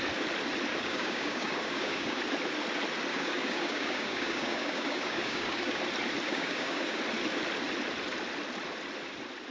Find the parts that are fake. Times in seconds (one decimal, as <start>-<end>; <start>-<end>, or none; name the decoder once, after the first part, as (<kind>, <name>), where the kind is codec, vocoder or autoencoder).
0.7-2.2 (codec, DAC); 3.1-5.8; 6.3-7.0